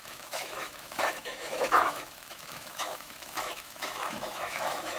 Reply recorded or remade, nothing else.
remade